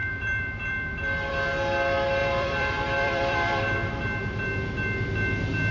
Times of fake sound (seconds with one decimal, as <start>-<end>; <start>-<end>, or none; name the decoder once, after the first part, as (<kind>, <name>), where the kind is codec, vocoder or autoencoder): 0.0-1.3 (vocoder, BigVGAN v2); 2.2-3.6